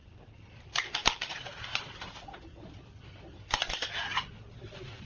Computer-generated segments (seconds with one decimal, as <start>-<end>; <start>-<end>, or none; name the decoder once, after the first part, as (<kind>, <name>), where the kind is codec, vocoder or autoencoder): none

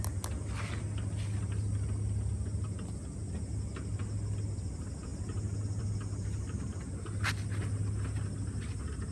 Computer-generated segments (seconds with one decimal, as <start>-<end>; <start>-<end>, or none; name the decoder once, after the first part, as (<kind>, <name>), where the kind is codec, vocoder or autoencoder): none

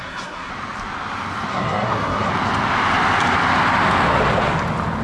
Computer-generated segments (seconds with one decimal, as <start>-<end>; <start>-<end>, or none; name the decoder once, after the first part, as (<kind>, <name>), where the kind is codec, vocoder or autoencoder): 0.0-0.5 (codec, SNAC); 1.5-2.3

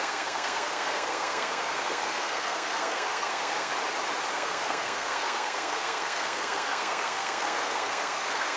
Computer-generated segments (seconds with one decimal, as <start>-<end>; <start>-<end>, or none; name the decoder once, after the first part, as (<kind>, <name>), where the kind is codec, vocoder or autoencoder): 0.0-3.7 (codec, SNAC); 4.3-8.6